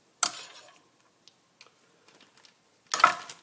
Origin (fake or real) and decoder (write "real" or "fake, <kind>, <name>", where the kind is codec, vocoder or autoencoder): real